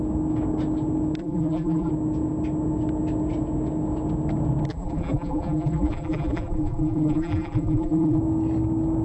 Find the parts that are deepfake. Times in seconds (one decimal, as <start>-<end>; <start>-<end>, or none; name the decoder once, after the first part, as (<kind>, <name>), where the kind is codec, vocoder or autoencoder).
1.2-1.9 (vocoder, BigVGAN v2); 4.7-8.2